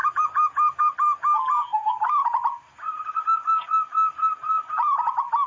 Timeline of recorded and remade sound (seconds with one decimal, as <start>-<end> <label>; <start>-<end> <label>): 0.0-5.5 recorded